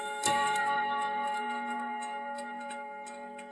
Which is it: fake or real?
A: fake